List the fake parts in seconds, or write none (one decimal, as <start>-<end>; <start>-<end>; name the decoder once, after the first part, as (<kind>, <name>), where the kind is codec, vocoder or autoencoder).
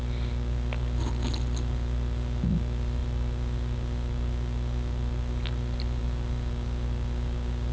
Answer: none